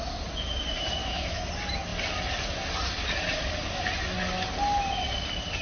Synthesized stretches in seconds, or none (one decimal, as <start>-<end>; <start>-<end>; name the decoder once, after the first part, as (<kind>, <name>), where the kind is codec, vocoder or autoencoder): 1.0-1.5 (autoencoder, DAC-VAE)